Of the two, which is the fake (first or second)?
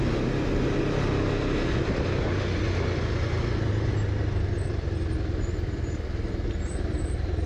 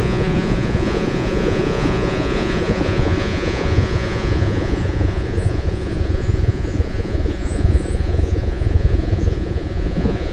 second